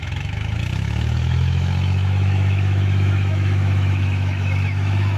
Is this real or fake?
fake